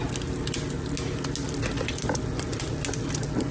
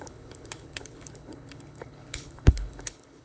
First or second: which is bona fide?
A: first